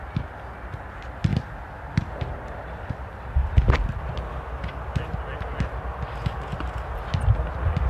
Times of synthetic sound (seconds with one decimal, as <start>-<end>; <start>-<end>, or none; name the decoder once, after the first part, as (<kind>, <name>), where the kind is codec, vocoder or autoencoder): none